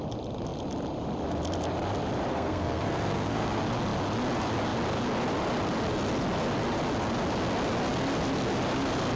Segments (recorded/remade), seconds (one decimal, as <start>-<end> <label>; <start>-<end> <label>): 0.0-2.3 recorded; 2.3-3.6 remade; 3.6-9.2 recorded